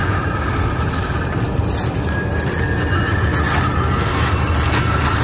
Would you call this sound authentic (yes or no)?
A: yes